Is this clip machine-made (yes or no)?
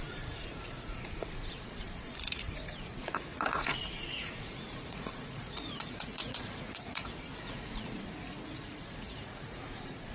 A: yes